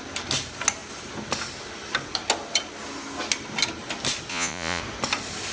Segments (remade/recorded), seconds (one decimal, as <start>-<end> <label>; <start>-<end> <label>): 0.0-4.3 recorded; 4.3-4.8 remade; 4.8-5.5 recorded